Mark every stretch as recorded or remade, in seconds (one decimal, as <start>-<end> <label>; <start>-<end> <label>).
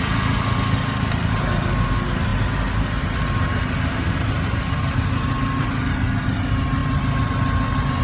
0.0-8.0 recorded